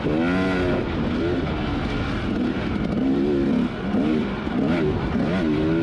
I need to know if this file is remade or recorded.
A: recorded